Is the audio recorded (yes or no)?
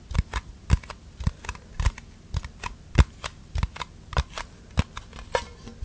yes